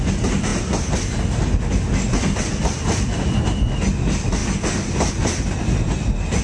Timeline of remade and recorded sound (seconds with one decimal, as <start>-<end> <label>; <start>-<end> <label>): 0.0-6.4 recorded